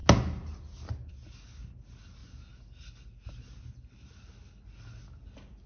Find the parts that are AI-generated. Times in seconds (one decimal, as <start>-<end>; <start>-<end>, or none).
none

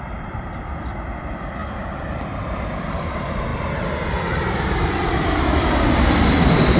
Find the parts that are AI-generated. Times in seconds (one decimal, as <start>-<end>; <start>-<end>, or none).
0.0-3.5; 4.7-6.8

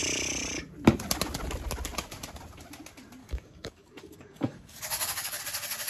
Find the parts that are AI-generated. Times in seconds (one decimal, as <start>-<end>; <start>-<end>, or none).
3.2-5.4

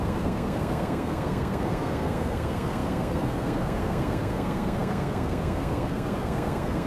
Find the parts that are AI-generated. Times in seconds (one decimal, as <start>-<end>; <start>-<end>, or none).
0.0-6.9

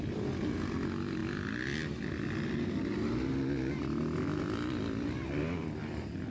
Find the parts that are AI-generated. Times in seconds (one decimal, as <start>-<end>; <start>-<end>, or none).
none